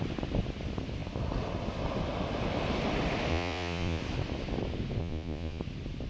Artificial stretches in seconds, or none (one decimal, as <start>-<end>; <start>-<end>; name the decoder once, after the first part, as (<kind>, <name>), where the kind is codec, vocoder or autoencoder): 3.3-4.0 (vocoder, Vocos); 5.0-5.6